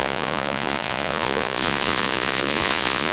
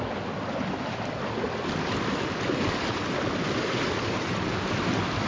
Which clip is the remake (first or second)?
first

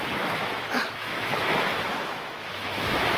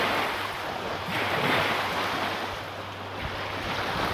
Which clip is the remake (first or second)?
first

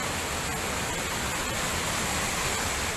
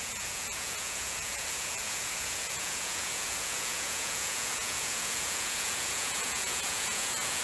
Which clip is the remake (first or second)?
second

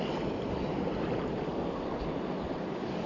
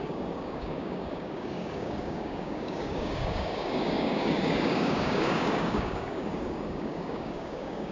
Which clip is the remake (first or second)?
second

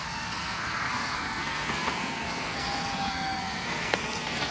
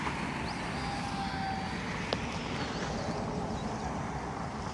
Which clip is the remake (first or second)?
first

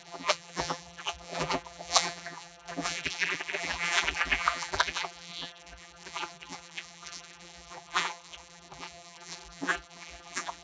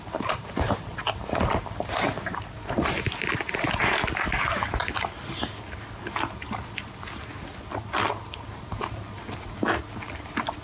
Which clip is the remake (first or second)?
first